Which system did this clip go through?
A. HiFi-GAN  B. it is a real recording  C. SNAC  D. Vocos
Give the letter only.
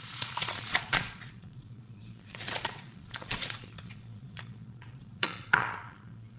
D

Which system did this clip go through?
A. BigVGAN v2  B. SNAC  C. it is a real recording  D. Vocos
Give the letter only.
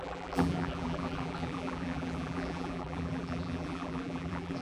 A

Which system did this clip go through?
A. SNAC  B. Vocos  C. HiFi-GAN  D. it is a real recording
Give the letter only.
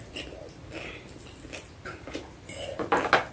D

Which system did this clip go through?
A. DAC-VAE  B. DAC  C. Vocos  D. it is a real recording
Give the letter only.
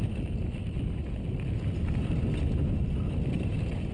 D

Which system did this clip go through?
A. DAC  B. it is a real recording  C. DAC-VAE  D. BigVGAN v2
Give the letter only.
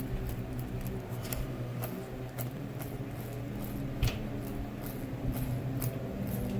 B